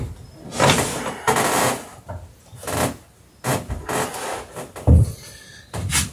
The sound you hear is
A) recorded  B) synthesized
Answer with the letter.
A